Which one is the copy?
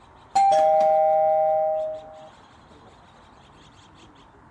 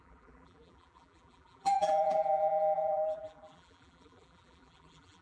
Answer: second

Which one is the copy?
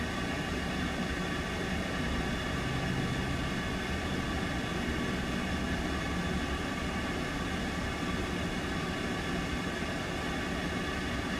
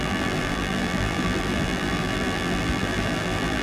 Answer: second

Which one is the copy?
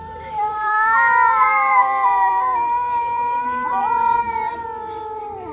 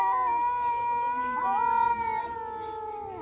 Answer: first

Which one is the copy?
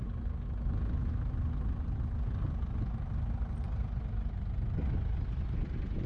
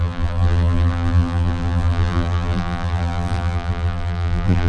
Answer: second